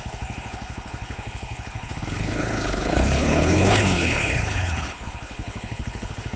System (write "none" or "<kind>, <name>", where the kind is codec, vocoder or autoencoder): codec, HILCodec